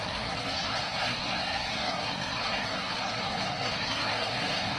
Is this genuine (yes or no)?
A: no